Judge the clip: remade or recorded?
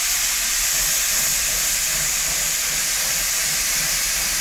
recorded